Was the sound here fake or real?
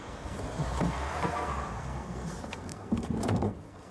fake